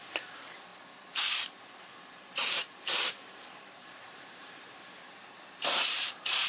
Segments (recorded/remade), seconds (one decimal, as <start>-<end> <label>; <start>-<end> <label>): 0.0-0.7 remade; 0.7-2.1 recorded; 2.1-6.5 remade